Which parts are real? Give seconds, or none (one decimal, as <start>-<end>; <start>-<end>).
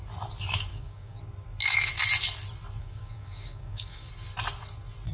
0.0-0.7; 1.2-2.8; 4.1-5.1